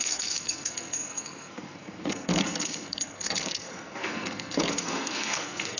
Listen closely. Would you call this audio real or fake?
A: fake